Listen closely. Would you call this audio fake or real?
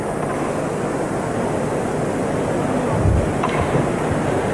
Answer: real